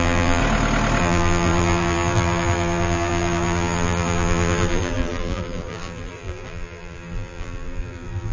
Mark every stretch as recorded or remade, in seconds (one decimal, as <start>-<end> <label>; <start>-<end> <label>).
0.0-0.4 remade; 0.4-1.0 recorded; 1.0-8.3 remade